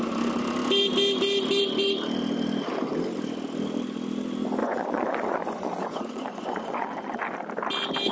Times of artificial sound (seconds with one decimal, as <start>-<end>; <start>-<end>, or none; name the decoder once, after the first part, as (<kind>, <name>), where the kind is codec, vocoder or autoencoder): 4.6-7.2 (vocoder, Vocos)